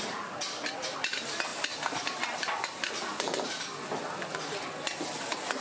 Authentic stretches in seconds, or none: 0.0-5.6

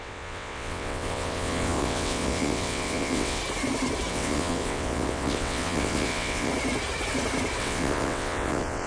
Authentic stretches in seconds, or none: 3.4-4.1; 6.5-7.6

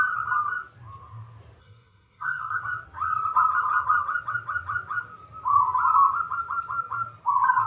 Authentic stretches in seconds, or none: 0.0-1.6; 2.6-7.7

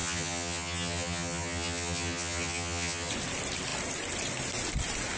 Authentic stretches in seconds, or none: 3.1-5.2

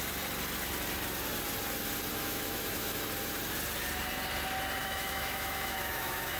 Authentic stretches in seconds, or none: 0.0-2.1; 3.0-4.8